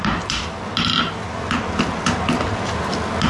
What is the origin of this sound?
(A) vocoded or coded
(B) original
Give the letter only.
B